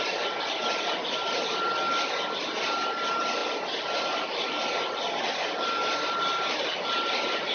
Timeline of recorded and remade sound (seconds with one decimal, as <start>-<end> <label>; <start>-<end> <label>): 0.0-7.5 recorded